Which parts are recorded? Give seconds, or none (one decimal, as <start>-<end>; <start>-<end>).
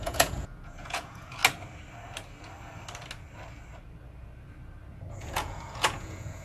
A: 1.4-5.2